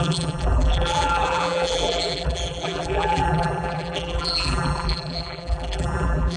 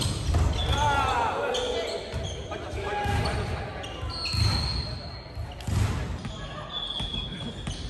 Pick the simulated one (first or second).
first